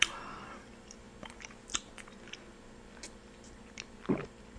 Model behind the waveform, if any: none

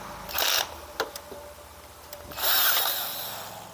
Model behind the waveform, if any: none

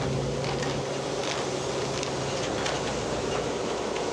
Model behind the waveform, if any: none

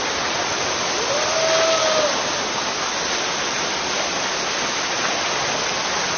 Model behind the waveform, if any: none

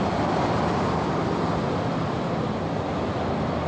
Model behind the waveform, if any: none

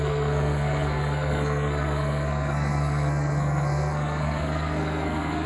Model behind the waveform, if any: codec, SNAC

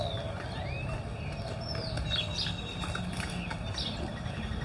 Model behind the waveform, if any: none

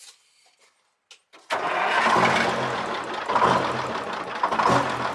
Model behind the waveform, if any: none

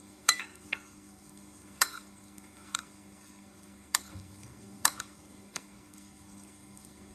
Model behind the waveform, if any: codec, SNAC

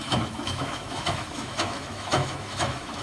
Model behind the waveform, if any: autoencoder, DAC-VAE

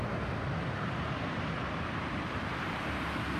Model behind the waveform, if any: none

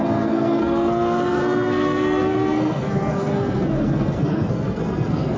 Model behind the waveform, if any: codec, SNAC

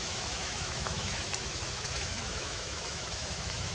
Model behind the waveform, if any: autoencoder, DAC-VAE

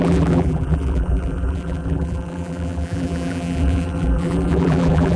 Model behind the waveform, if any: vocoder, BigVGAN v2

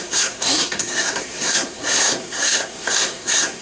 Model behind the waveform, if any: codec, SNAC